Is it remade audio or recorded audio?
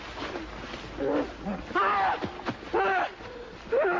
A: recorded